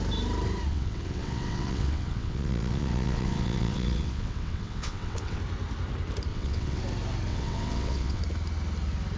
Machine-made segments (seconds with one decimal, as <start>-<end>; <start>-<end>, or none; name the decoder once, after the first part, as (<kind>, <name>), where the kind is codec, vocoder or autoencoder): 0.7-5.4 (vocoder, WaveNeXt); 6.3-6.8; 7.3-8.2